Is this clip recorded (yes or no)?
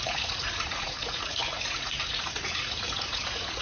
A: no